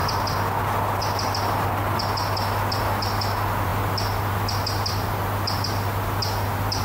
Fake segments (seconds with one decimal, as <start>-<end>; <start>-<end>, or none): none